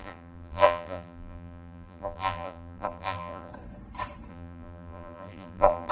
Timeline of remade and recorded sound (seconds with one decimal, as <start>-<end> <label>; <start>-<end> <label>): 0.0-3.5 remade; 3.5-4.3 recorded; 4.3-5.9 remade